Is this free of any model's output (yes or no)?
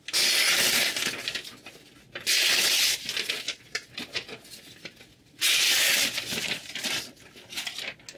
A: yes